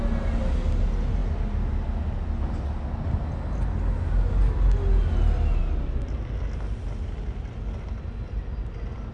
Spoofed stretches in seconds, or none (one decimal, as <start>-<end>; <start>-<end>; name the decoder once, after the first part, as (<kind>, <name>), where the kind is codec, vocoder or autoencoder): none